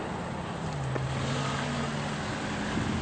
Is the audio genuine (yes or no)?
yes